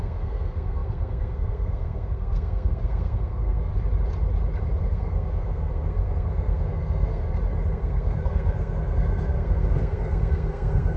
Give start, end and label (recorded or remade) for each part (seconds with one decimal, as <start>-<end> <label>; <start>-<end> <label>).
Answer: 0.0-3.7 remade; 3.7-4.8 recorded; 4.8-7.2 remade; 7.2-7.7 recorded; 7.7-11.0 remade